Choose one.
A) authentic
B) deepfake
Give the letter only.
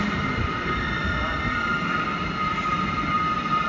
A